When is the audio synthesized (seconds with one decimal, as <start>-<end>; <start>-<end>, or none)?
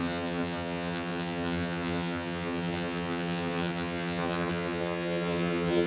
0.0-5.9